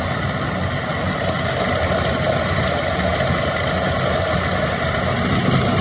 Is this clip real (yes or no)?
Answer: yes